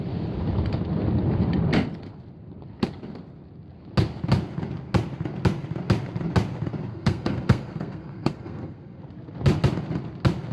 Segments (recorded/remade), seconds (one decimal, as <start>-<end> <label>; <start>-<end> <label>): 0.0-6.9 recorded; 6.9-9.0 remade; 9.0-10.5 recorded